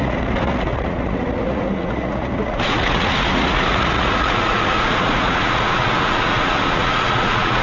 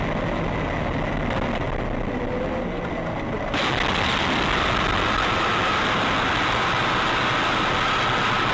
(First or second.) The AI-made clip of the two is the first